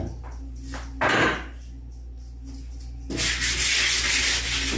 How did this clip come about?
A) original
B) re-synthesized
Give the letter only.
A